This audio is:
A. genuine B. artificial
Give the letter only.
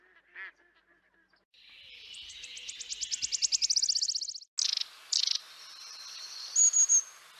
A